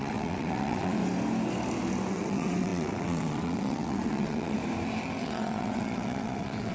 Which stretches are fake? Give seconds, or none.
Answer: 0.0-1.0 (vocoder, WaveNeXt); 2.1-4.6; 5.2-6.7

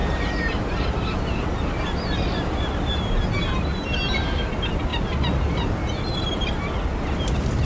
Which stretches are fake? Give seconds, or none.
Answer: none